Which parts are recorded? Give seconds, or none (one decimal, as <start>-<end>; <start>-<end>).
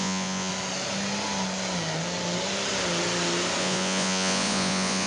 0.5-3.6